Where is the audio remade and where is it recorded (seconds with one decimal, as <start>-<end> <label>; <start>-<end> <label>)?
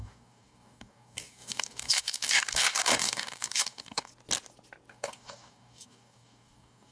0.0-4.1 remade; 4.1-4.9 recorded; 4.9-6.9 remade